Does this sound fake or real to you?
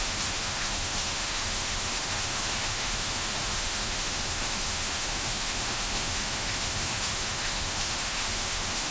fake